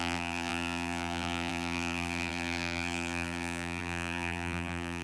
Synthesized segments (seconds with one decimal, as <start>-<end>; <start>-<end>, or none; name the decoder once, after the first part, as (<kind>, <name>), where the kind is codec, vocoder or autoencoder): 0.0-5.0 (vocoder, BigVGAN v2)